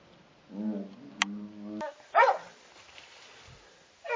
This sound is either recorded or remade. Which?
recorded